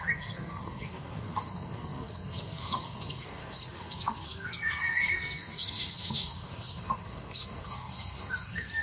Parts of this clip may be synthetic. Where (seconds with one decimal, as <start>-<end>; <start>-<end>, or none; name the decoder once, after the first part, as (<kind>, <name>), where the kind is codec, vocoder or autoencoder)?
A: 0.0-8.8 (codec, SNAC)